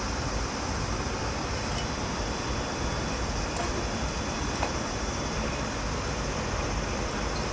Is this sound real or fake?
fake